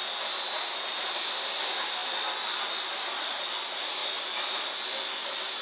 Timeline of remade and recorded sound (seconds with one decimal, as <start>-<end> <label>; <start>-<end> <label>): 0.0-5.6 recorded